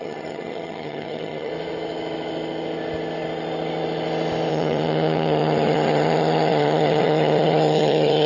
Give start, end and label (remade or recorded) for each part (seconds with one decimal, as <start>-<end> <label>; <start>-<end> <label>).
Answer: 0.0-1.5 remade; 1.5-4.5 recorded; 4.5-8.3 remade